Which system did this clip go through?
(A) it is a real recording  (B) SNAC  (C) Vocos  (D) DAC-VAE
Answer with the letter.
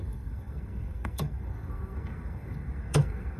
B